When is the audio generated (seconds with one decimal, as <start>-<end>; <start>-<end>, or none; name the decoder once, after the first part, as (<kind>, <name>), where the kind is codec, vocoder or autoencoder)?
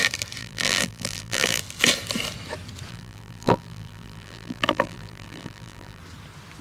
0.4-1.6 (vocoder, BigVGAN v2); 2.9-6.0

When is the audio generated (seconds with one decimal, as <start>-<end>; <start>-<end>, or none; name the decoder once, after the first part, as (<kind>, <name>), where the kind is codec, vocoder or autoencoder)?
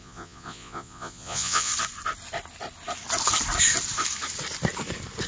0.0-1.7 (vocoder, Vocos)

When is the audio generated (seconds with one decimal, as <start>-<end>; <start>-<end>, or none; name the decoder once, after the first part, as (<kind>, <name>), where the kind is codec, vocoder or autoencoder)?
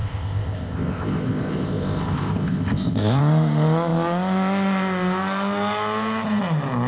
0.0-3.2 (codec, ZipCodec)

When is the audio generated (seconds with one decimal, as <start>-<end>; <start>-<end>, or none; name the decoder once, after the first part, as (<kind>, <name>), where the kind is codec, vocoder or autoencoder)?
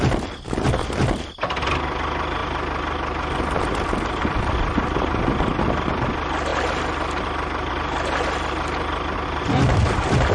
none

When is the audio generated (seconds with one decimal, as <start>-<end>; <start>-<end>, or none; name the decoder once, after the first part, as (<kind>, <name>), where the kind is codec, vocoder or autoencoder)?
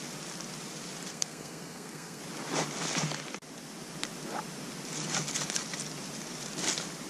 1.1-2.2 (codec, SNAC)